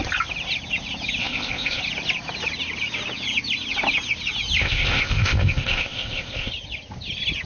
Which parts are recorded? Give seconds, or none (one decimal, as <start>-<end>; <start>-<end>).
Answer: 0.0-1.2; 1.8-4.6; 6.5-7.5